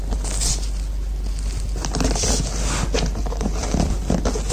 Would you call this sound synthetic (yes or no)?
no